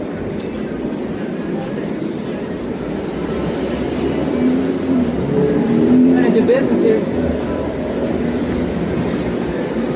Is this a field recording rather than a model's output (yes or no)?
no